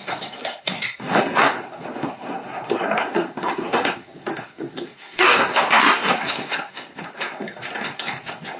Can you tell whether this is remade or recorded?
remade